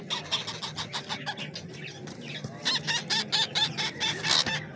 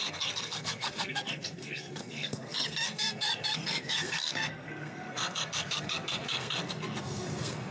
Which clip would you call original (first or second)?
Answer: first